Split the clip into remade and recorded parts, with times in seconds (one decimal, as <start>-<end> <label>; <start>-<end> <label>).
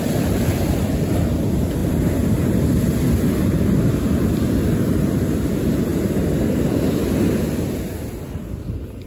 0.0-9.1 recorded